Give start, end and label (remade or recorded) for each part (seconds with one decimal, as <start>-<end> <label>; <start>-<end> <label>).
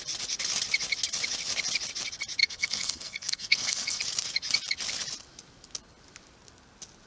0.0-2.4 recorded; 2.4-4.0 remade; 4.0-7.1 recorded